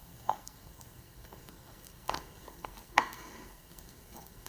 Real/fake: fake